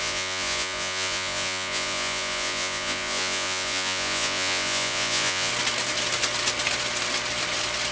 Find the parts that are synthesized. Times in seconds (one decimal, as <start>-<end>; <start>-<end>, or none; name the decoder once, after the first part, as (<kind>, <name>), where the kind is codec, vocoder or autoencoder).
0.0-5.5 (vocoder, Vocos)